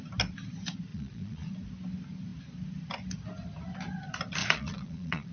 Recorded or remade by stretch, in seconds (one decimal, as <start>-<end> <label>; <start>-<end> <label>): 0.0-0.9 recorded; 0.9-1.5 remade; 1.5-4.4 recorded; 4.4-5.3 remade